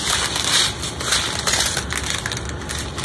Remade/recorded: recorded